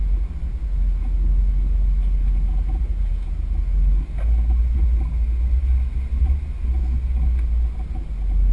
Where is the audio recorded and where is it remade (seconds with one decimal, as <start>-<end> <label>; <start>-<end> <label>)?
0.0-8.5 recorded